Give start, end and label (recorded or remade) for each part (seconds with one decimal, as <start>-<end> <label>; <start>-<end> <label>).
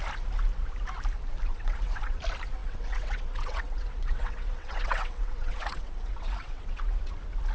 0.0-1.5 recorded; 1.5-2.2 remade; 2.2-2.6 recorded; 2.6-7.1 remade; 7.1-7.5 recorded